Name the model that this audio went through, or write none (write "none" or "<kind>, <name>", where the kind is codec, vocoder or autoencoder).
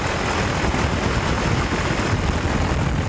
none